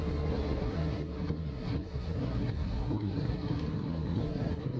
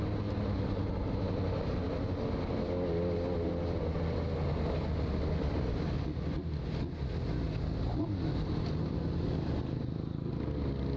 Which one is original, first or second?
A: second